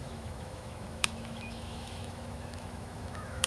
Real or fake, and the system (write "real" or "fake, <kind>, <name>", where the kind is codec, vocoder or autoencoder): fake, autoencoder, DAC-VAE